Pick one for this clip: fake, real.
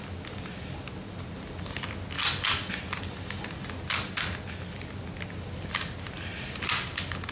real